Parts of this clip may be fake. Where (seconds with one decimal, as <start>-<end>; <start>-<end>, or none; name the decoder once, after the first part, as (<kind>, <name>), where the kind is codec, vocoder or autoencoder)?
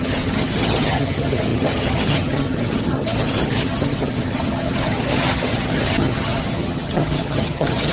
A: 0.0-7.9 (vocoder, HiFi-GAN)